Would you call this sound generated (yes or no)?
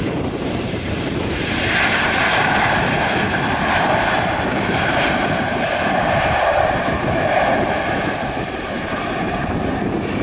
yes